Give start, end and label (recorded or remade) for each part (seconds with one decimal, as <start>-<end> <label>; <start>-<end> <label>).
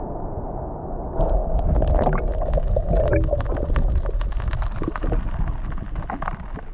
0.0-6.7 recorded